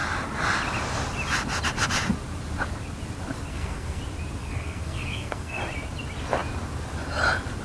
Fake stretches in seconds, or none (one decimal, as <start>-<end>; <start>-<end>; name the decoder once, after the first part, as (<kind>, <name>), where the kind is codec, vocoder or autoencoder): 3.5-4.0 (codec, SNAC); 4.4-5.6